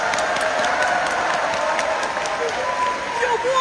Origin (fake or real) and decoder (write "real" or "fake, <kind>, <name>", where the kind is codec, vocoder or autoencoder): real